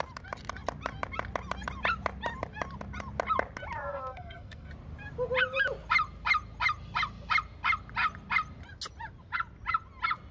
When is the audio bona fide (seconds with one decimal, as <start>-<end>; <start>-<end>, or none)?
0.0-3.9; 4.7-10.3

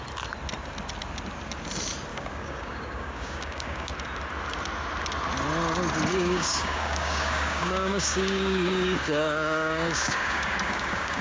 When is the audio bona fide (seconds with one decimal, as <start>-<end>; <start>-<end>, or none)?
0.0-2.1; 3.9-6.1